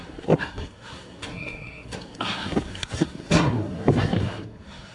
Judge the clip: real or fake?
fake